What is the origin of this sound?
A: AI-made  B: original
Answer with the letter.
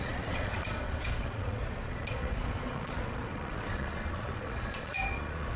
A